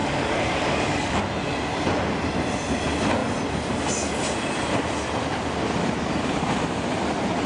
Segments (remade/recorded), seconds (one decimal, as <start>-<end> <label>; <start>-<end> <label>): 0.0-1.2 remade; 1.2-7.5 recorded